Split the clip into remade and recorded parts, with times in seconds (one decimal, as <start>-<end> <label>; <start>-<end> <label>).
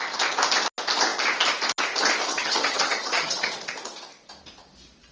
0.0-2.3 recorded; 2.3-3.5 remade; 3.5-5.1 recorded